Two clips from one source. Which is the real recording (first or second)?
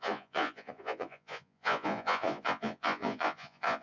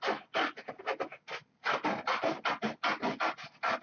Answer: second